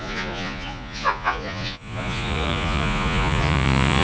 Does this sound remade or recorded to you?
remade